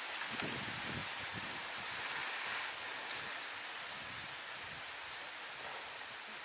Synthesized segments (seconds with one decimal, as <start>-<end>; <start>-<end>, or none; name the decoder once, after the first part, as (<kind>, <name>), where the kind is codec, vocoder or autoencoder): 1.0-1.8 (vocoder, BigVGAN v2)